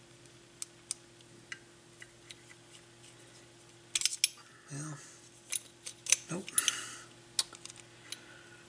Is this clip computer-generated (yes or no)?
no